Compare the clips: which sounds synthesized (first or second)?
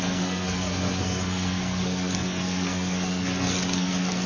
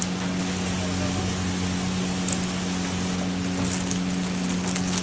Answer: first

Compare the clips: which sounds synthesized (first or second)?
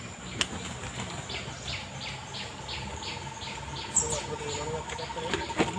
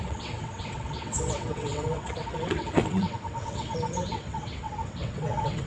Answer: second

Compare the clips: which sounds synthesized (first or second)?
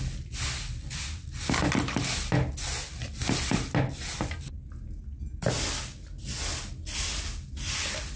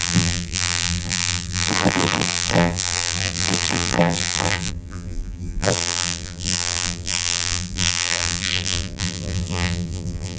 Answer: second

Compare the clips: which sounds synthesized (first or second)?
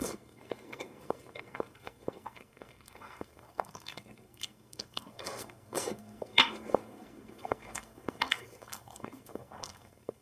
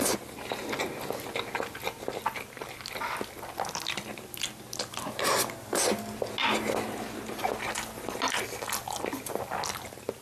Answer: first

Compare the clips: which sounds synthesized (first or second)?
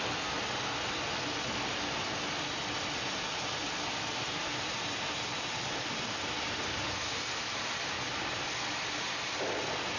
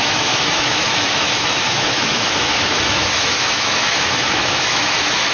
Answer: second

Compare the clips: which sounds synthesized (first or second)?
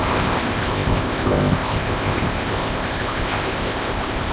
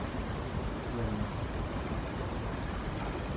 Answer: first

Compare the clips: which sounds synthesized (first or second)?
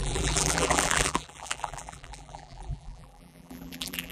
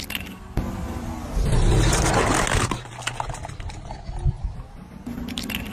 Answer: first